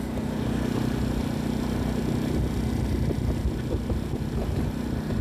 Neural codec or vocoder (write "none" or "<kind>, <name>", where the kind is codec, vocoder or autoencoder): none